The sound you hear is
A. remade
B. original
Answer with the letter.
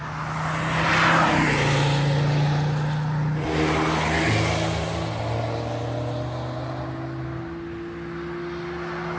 B